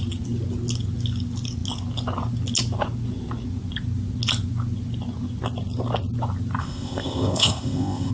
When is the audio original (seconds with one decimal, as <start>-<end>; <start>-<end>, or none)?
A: 0.0-6.6